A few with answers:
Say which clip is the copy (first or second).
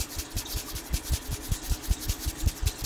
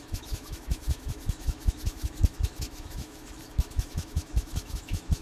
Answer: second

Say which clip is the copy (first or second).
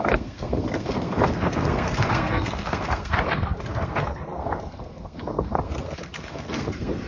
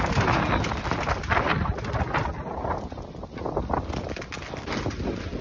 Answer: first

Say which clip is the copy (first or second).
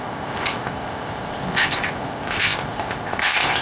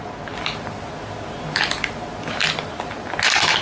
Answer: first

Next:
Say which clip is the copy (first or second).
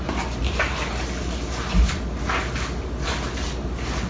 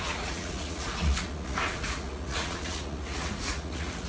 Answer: second